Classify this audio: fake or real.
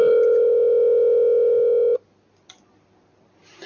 real